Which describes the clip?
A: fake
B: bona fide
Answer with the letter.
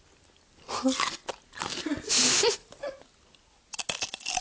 B